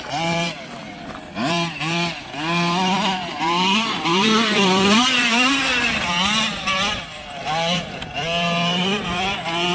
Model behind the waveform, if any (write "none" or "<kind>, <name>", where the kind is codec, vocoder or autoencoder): vocoder, BigVGAN v2